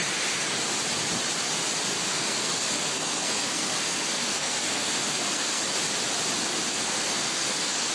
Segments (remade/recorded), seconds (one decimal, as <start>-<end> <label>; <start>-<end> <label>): 0.0-2.0 recorded; 2.0-5.6 remade; 5.6-6.7 recorded; 6.7-7.9 remade